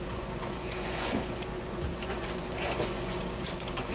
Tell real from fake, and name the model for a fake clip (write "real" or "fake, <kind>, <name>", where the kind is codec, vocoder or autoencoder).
fake, vocoder, Vocos